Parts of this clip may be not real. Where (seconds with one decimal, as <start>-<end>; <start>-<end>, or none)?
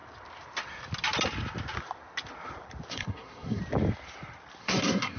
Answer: 2.9-3.6; 4.6-5.2